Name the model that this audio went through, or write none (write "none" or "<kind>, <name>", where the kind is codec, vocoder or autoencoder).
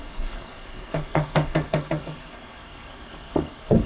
codec, SNAC